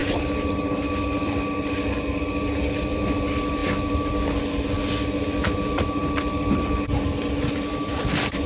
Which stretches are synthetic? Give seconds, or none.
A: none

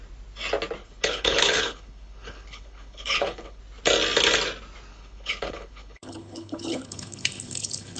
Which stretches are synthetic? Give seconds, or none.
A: 0.8-3.6 (codec, HILCodec); 4.9-8.0

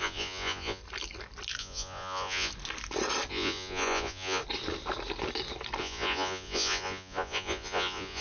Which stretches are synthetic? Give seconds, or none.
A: 0.0-0.8 (vocoder, Vocos); 1.6-2.5; 3.3-4.4; 5.8-8.2

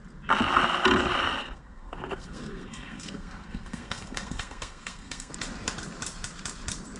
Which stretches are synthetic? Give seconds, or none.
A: 1.4-5.3 (codec, SNAC)